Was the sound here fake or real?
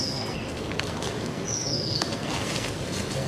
fake